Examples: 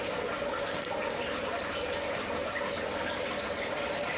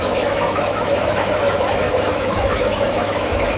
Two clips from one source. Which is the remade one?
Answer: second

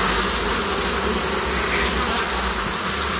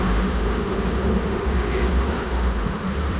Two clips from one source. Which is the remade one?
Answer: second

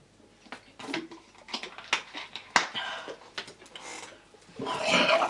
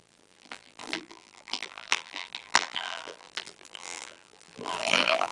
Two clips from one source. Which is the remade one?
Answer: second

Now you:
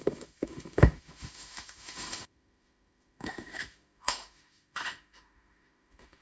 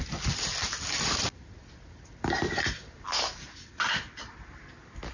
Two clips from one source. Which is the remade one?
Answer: first